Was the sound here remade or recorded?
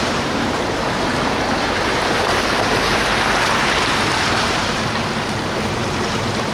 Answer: remade